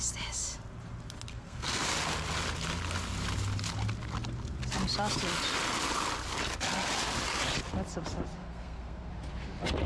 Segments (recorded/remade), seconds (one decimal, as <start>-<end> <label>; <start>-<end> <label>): 0.0-1.3 recorded; 1.3-1.8 remade; 1.8-8.4 recorded; 8.4-9.1 remade; 9.1-9.9 recorded